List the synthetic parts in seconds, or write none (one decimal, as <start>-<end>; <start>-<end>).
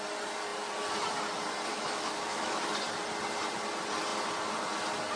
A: 1.7-2.6